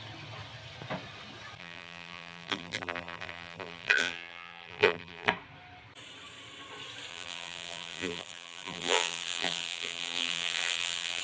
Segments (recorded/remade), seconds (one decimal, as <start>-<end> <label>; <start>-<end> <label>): 0.0-1.6 recorded; 1.6-5.3 remade; 5.3-7.1 recorded; 7.1-11.2 remade